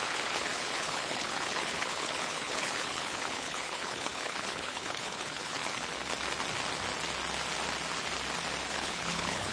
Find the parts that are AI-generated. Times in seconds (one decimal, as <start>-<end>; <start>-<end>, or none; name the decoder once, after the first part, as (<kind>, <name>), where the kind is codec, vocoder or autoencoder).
0.0-5.6 (codec, HILCodec); 8.7-9.5